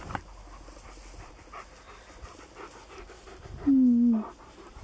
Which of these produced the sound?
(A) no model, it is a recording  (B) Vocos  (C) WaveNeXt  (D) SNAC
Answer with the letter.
A